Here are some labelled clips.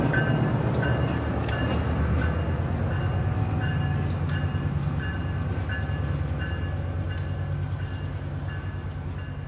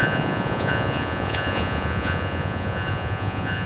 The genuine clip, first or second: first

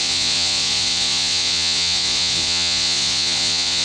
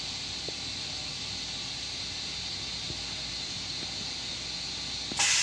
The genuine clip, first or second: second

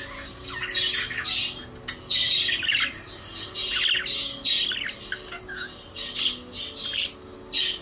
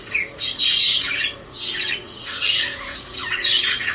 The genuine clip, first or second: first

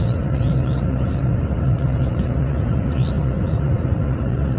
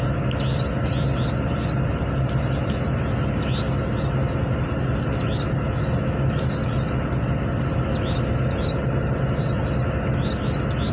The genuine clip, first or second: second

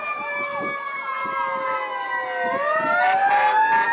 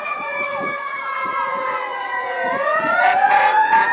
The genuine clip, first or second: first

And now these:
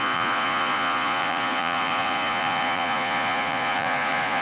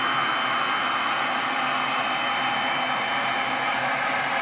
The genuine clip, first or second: second